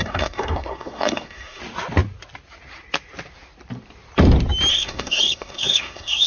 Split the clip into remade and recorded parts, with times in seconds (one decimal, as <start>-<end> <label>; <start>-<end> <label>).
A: 0.0-1.6 remade; 1.6-4.7 recorded; 4.7-6.3 remade

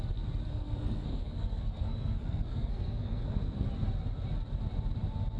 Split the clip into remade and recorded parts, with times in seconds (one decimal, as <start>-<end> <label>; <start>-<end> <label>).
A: 0.0-0.5 recorded; 0.5-3.7 remade; 3.7-5.4 recorded

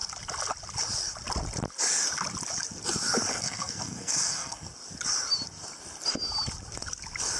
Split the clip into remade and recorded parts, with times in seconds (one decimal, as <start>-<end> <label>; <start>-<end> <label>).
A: 0.0-3.3 recorded; 3.3-4.7 remade; 4.7-7.4 recorded

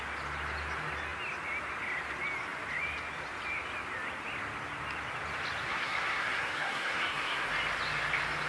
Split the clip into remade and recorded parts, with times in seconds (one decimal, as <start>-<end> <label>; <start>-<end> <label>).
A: 0.0-5.6 recorded; 5.6-7.5 remade; 7.5-8.5 recorded